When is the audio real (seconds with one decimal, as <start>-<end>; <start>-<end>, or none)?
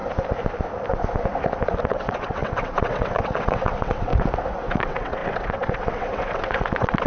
0.0-1.8; 4.1-4.7